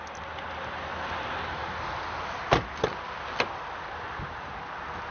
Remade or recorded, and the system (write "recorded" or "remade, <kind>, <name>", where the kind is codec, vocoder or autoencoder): recorded